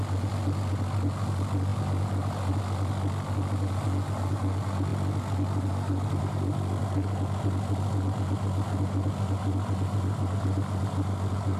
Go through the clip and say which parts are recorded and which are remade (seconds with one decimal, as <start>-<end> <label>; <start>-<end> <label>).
0.0-11.6 recorded